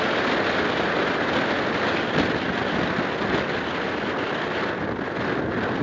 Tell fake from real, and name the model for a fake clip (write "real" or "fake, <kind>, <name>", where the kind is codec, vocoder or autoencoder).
real